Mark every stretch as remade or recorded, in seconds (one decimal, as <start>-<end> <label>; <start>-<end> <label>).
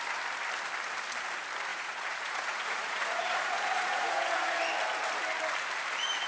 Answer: 0.0-1.7 recorded; 1.7-4.6 remade; 4.6-6.3 recorded